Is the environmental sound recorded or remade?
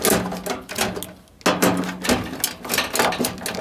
recorded